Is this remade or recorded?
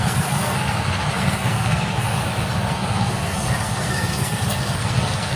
remade